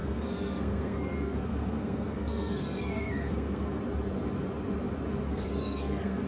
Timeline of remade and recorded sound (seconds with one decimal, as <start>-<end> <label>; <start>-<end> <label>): 0.0-3.8 remade; 3.8-5.3 recorded; 5.3-6.3 remade